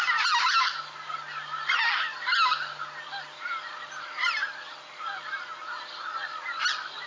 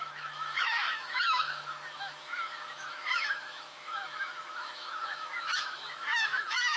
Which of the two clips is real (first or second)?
first